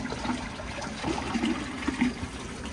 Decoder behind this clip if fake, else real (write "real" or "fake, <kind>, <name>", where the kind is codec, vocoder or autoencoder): real